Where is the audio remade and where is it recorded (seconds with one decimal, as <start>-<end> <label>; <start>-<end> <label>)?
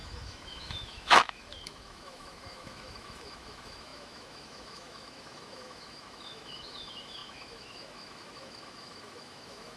0.0-9.8 remade